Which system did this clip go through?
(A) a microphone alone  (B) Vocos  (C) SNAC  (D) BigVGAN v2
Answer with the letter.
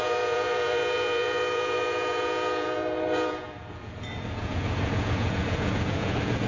B